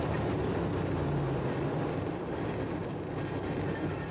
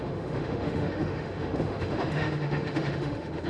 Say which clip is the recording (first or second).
first